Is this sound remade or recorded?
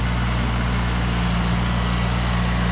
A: recorded